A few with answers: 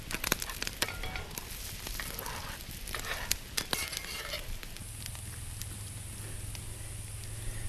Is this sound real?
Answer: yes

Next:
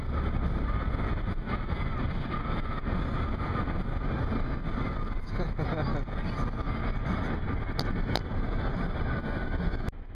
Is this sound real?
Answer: yes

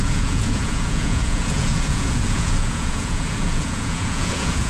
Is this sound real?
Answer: no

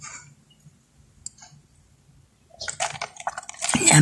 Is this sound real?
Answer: yes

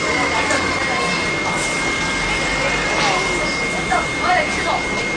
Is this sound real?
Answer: yes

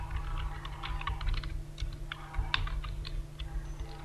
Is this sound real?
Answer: yes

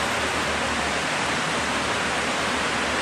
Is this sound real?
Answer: yes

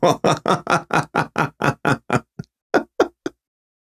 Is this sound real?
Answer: yes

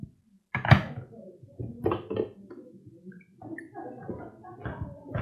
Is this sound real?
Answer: yes